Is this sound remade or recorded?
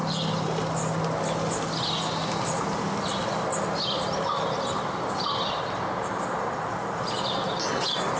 recorded